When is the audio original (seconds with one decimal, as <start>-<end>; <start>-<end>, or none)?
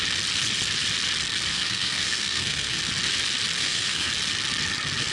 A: 0.0-1.5; 2.8-3.6; 4.1-5.1